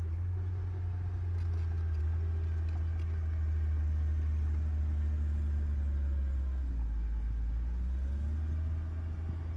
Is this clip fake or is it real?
real